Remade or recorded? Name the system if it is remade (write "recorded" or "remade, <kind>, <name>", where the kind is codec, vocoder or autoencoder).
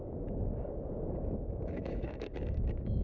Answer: remade, codec, DAC